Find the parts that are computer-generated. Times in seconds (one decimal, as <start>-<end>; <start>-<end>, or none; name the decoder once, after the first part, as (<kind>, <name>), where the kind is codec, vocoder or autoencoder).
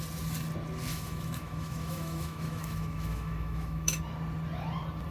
0.9-4.0 (autoencoder, DAC-VAE)